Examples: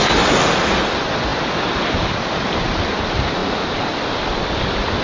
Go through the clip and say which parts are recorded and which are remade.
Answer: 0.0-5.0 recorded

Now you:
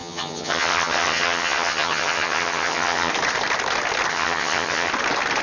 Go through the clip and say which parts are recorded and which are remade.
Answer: 0.0-3.1 remade; 3.1-4.1 recorded; 4.1-4.9 remade; 4.9-5.4 recorded